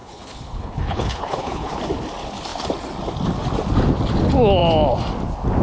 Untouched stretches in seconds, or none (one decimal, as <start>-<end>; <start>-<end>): 1.8-5.6